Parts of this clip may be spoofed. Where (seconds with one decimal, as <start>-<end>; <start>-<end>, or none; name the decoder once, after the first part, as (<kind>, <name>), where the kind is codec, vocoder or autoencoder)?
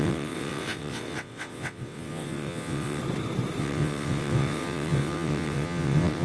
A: 0.0-3.0 (vocoder, WaveNeXt); 3.6-6.2